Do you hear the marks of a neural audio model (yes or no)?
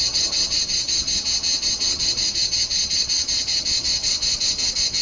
yes